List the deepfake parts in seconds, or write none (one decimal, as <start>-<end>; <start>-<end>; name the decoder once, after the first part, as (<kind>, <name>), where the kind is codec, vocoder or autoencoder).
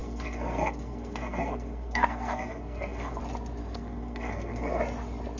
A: 0.0-3.2 (codec, SNAC); 3.6-4.8